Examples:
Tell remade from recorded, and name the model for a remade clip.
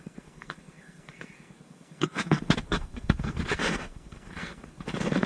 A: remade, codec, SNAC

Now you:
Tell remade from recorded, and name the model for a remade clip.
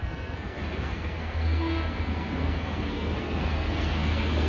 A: remade, codec, SNAC